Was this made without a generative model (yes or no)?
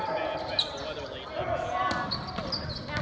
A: yes